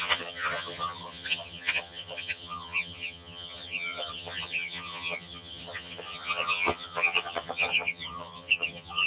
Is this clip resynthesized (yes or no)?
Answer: yes